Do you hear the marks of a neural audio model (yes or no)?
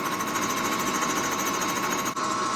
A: no